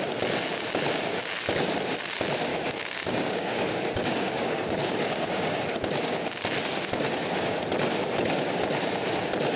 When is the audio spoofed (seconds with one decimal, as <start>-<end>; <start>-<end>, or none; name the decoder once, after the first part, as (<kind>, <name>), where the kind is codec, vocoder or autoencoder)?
2.5-5.6 (codec, DAC)